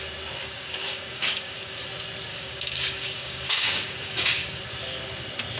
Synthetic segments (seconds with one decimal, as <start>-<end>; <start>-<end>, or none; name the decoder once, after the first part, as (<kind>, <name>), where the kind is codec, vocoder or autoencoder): 0.4-1.8 (codec, DAC); 2.3-4.6